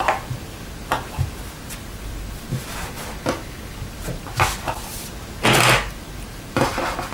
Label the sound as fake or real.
real